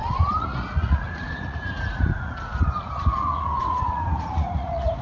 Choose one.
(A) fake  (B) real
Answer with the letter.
A